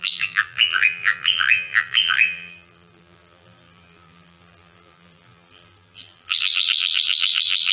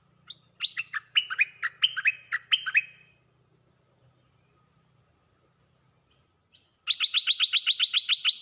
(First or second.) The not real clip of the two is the first